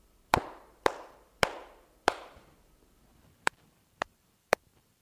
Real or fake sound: fake